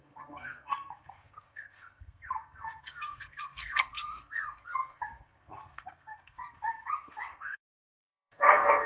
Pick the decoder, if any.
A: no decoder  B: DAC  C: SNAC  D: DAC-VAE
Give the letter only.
C